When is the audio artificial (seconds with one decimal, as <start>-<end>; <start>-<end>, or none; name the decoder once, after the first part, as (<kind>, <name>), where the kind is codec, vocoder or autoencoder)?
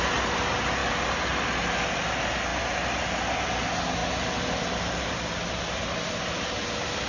none